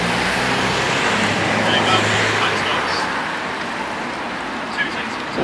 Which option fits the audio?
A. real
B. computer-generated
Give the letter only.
A